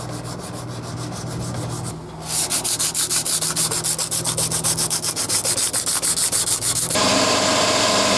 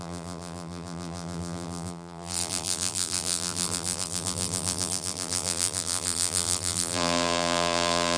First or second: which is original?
first